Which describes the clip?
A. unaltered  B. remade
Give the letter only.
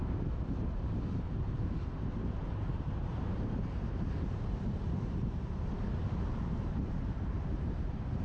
B